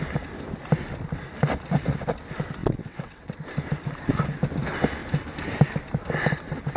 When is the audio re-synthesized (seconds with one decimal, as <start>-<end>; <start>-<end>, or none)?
2.6-3.3